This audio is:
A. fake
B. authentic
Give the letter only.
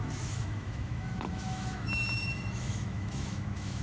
A